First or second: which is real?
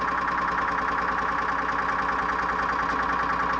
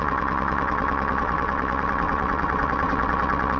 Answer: first